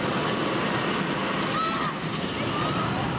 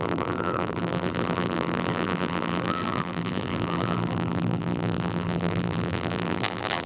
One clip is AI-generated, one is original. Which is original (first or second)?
first